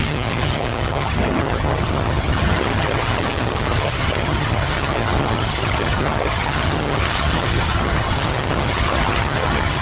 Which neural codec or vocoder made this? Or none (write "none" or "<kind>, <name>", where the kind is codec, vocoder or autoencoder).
vocoder, HiFi-GAN